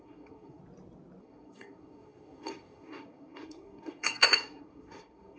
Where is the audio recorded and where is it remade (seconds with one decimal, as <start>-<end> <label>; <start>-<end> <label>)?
0.0-0.6 remade; 0.6-1.2 recorded; 1.2-5.4 remade